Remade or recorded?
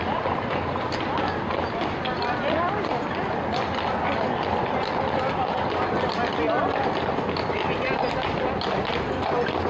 recorded